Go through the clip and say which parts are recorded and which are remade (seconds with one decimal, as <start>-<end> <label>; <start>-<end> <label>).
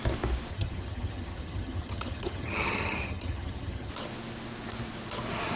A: 0.0-0.5 recorded; 0.5-3.9 remade; 3.9-5.6 recorded